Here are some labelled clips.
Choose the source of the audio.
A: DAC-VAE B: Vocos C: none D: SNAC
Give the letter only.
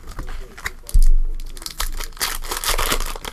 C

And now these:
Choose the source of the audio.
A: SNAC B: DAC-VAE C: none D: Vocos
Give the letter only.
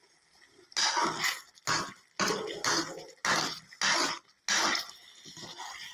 C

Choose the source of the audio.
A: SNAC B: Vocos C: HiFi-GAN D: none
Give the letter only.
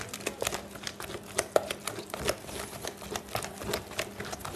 D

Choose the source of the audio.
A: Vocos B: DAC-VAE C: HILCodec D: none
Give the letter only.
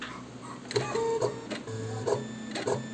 D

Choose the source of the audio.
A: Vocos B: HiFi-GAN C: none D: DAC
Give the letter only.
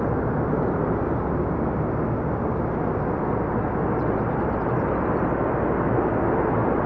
C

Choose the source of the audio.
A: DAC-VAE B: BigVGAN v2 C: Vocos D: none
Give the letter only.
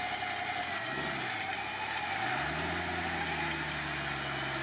D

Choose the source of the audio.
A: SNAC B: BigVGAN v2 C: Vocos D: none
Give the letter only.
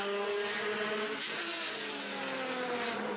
D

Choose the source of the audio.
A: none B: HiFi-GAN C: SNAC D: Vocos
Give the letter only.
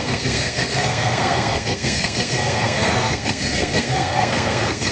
C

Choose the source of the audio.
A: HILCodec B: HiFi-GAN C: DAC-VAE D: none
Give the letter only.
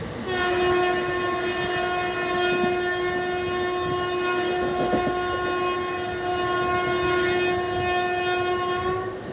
D